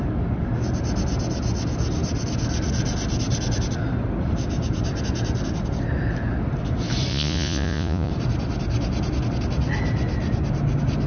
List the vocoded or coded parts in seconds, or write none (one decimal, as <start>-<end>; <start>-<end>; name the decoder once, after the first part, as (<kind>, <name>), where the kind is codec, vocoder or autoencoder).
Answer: 7.1-8.1 (vocoder, Vocos)

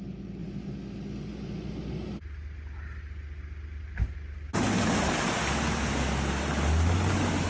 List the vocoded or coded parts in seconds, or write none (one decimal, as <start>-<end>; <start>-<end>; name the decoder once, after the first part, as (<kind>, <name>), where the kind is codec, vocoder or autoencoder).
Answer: none

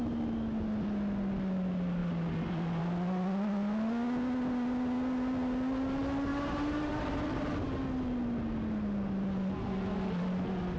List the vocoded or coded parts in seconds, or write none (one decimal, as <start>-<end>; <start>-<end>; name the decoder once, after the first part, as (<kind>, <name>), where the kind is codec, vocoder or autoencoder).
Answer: 6.3-7.4 (vocoder, BigVGAN v2)